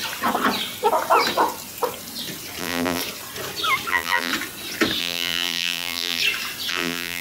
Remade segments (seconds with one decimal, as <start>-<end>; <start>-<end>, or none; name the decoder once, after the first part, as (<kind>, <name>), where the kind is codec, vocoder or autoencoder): 2.6-3.0 (vocoder, BigVGAN v2); 3.9-4.3; 5.0-6.2; 6.7-7.2